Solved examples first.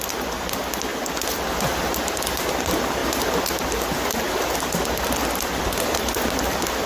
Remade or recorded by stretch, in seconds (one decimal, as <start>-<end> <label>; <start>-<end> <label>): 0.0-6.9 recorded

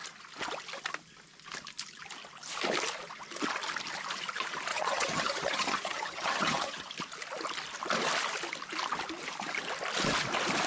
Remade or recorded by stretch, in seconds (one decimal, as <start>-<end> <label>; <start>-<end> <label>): 0.0-4.7 recorded; 4.7-6.9 remade; 6.9-10.7 recorded

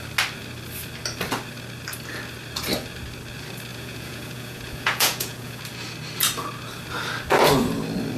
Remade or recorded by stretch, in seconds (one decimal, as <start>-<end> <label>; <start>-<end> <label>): 0.0-3.7 recorded; 3.7-5.6 remade; 5.6-8.2 recorded

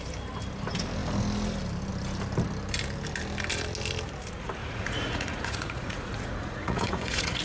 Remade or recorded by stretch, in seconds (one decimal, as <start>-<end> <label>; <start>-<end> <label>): 0.0-4.6 recorded; 4.6-7.4 remade

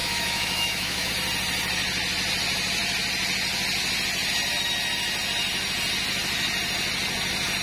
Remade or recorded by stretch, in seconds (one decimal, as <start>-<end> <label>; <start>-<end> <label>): 0.0-1.1 remade; 1.1-7.6 recorded

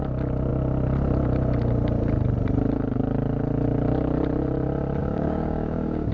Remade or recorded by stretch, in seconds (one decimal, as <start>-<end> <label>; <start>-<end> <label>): 0.0-5.0 recorded; 5.0-6.1 remade

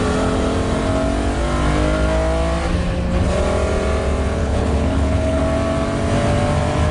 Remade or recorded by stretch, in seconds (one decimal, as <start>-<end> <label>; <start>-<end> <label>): 0.0-4.4 recorded; 4.4-5.4 remade; 5.4-6.9 recorded

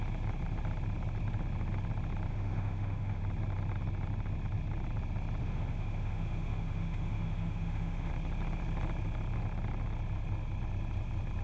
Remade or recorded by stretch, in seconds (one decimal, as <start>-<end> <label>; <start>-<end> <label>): 0.0-2.3 recorded; 2.3-3.2 remade; 3.2-5.4 recorded; 5.4-8.1 remade; 8.1-11.4 recorded